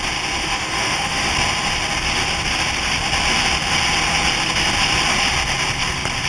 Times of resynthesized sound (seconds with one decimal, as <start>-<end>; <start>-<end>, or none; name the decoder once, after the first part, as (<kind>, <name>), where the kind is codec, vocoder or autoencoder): 0.4-1.3 (autoencoder, DAC-VAE)